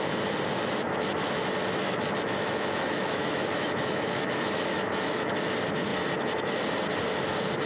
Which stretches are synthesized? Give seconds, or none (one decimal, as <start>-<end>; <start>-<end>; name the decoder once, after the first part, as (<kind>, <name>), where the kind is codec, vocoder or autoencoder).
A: 1.8-5.5 (autoencoder, DAC-VAE)